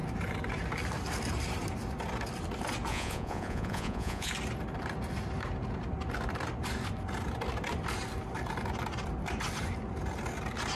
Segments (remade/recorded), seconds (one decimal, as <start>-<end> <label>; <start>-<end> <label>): 0.0-2.9 recorded; 2.9-4.3 remade; 4.3-10.8 recorded

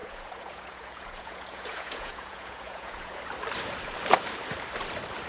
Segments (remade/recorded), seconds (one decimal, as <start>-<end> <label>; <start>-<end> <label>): 0.0-3.2 remade; 3.2-5.3 recorded

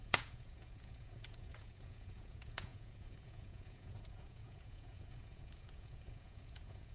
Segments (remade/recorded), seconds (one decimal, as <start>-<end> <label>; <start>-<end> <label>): 0.0-6.9 remade

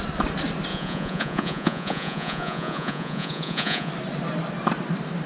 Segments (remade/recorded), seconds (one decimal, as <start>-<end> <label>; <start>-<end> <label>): 0.0-0.7 recorded; 0.7-3.9 remade; 3.9-5.3 recorded

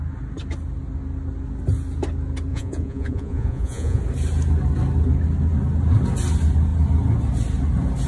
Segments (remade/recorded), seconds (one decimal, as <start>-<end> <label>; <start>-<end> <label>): 0.0-2.5 recorded; 2.5-4.0 remade; 4.0-8.1 recorded

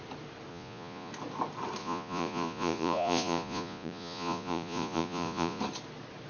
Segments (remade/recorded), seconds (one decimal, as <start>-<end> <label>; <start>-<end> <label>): 0.0-0.5 recorded; 0.5-1.1 remade; 1.1-1.8 recorded; 1.8-5.6 remade; 5.6-6.3 recorded

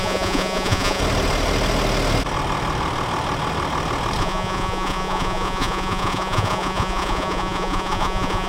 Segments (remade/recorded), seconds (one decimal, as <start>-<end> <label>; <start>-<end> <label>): 0.0-1.0 remade; 1.0-4.2 recorded; 4.2-8.5 remade

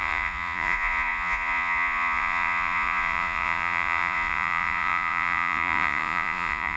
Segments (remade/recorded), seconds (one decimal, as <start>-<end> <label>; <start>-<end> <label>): 0.0-6.8 remade